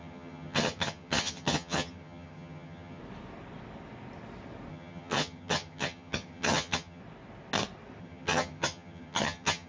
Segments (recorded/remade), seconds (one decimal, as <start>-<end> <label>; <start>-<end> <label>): 0.0-3.0 remade; 3.0-4.7 recorded; 4.7-7.0 remade; 7.0-8.0 recorded; 8.0-9.7 remade